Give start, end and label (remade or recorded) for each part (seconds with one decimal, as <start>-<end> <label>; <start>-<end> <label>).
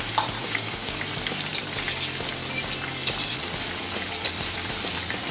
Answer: 0.0-0.4 recorded; 0.4-1.0 remade; 1.0-5.3 recorded